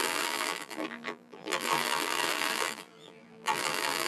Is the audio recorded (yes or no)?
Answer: no